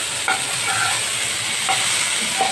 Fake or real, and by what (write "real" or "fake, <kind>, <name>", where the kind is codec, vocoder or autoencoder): real